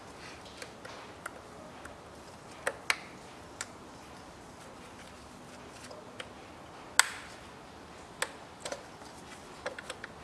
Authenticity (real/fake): real